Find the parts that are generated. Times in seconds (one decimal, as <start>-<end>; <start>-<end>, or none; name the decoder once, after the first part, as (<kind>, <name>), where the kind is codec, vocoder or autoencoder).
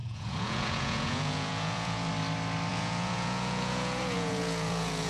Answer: 0.0-2.1 (vocoder, Vocos); 2.7-5.1